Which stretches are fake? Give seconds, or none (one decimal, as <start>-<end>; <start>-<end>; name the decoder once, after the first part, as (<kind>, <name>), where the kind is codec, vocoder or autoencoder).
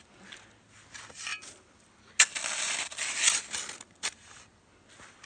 none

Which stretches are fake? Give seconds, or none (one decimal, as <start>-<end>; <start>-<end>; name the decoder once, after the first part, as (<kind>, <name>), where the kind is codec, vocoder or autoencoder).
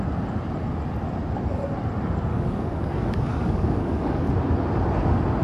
2.3-4.3 (codec, DAC)